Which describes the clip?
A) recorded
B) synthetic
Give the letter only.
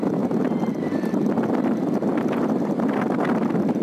A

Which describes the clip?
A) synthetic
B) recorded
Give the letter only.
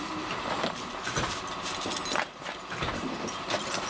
B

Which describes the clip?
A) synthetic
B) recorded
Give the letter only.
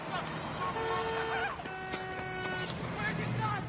B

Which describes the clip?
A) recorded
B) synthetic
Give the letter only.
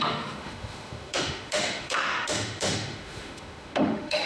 B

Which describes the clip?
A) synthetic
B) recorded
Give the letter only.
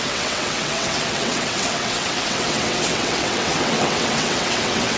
A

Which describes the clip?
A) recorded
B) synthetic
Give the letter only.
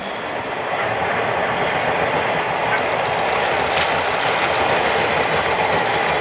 A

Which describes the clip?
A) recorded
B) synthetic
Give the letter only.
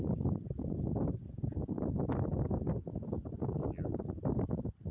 A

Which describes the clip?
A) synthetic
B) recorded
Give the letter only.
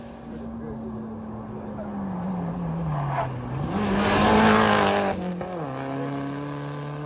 B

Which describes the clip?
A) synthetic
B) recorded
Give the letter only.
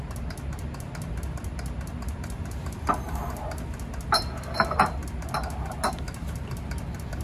B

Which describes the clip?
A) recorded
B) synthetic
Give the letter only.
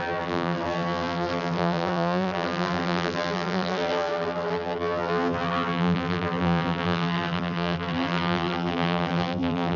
B